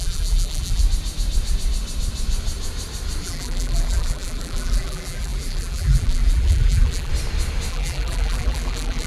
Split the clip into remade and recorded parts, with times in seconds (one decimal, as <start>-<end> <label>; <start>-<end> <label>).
0.0-0.8 remade; 0.8-3.2 recorded; 3.2-7.1 remade; 7.1-7.7 recorded; 7.7-9.1 remade

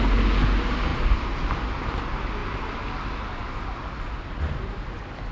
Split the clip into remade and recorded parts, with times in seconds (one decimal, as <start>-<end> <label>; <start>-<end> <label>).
0.0-5.3 recorded

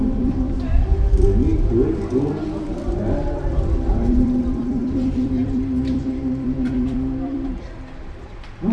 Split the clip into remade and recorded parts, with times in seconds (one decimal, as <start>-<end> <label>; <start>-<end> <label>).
0.0-8.7 remade